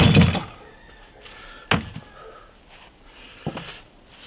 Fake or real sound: real